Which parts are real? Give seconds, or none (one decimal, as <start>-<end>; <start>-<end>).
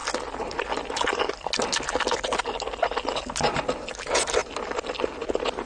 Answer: 0.0-5.7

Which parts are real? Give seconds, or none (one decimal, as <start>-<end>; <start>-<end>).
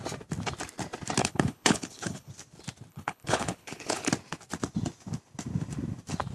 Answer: 0.0-1.2; 2.3-2.9; 4.1-6.3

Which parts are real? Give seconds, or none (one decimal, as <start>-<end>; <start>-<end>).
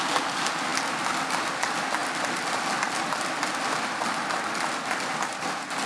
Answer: 0.0-5.9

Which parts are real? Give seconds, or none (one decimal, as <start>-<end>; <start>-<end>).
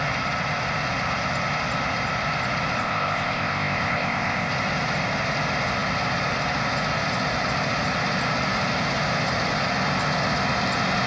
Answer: 0.0-2.8; 4.5-11.1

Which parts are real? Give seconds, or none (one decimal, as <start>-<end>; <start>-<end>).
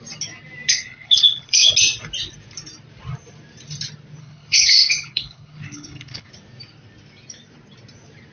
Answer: 0.0-0.7; 1.7-4.2; 6.3-8.3